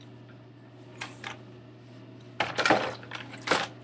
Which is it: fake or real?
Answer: real